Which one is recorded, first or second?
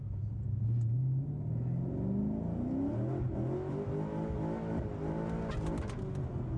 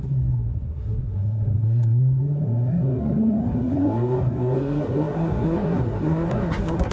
first